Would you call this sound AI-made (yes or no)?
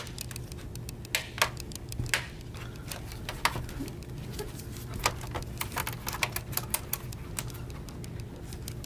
no